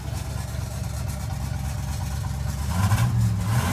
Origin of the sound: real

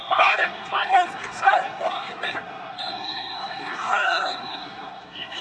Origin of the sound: fake